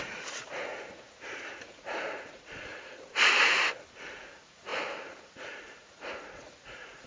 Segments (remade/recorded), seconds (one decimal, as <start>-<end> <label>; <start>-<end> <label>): 0.0-3.1 remade; 3.1-4.1 recorded; 4.1-7.1 remade